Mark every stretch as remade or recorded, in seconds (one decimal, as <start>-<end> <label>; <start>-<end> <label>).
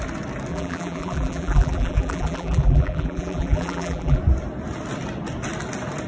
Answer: 0.0-0.5 recorded; 0.5-4.2 remade; 4.2-6.1 recorded